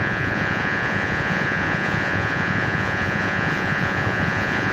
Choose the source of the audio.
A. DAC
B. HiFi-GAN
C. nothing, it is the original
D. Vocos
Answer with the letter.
D